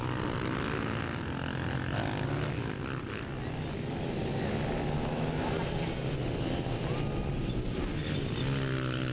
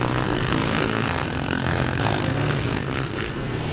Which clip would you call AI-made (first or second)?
second